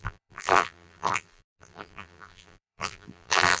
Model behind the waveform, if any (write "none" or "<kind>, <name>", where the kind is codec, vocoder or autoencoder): vocoder, BigVGAN v2